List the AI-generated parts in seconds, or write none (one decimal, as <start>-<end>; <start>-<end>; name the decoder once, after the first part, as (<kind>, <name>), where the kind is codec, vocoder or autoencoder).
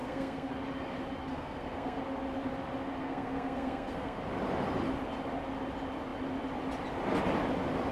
0.0-0.5 (codec, SNAC); 1.3-2.0; 3.0-4.2